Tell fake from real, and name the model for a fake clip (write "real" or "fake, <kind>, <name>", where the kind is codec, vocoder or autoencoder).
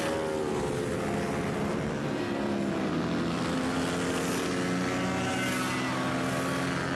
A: real